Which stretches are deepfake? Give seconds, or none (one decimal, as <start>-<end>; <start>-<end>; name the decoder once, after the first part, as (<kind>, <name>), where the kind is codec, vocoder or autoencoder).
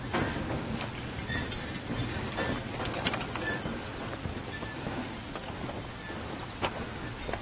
none